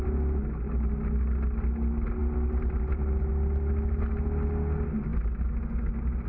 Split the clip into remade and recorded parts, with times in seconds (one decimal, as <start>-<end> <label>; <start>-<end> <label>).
0.0-6.3 recorded